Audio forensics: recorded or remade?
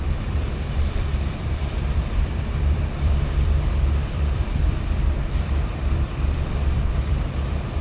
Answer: remade